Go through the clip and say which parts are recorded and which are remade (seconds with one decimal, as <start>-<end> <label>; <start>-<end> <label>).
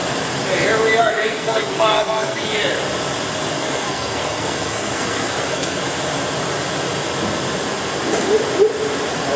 0.0-1.0 recorded; 1.0-2.6 remade; 2.6-3.5 recorded; 3.5-5.8 remade; 5.8-9.4 recorded